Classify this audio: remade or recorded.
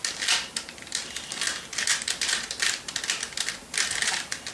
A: recorded